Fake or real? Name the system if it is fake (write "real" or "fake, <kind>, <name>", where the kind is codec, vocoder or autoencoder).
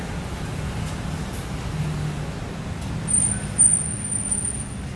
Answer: real